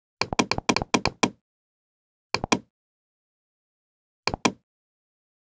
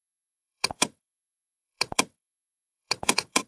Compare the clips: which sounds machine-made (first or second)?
second